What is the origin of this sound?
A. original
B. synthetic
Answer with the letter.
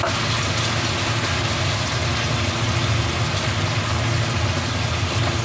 A